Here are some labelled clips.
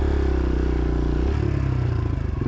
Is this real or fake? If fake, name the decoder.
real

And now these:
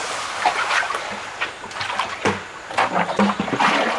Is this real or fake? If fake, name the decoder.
real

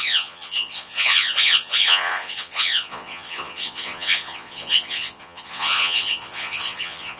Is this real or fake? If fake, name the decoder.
fake, vocoder, Vocos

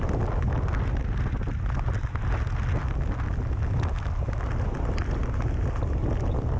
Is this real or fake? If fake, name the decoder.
real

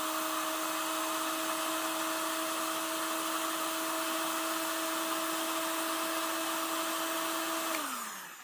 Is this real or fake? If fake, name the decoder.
real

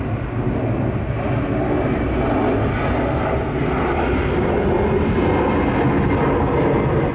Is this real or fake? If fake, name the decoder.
real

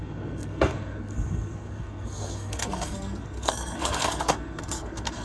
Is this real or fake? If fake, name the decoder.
fake, codec, SNAC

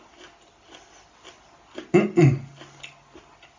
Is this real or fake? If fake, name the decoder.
real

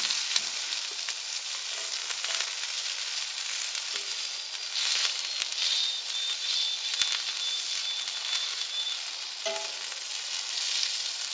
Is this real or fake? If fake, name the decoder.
real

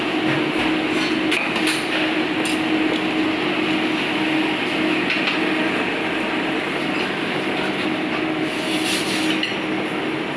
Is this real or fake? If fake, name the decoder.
real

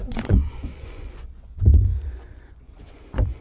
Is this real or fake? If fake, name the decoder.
fake, vocoder, Vocos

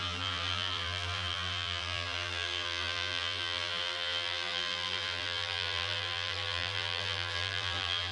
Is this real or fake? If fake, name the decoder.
fake, vocoder, BigVGAN v2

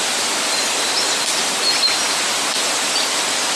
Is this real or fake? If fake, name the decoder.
real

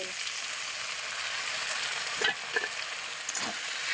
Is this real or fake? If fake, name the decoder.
real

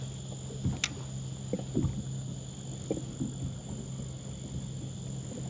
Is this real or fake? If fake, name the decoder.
real